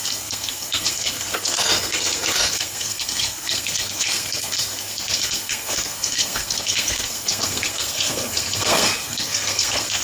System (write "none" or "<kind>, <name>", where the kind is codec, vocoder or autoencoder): codec, SNAC